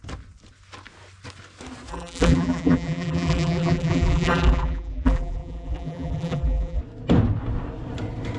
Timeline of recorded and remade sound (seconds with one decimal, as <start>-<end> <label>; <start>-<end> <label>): 0.0-1.9 recorded; 1.9-6.8 remade; 6.8-8.4 recorded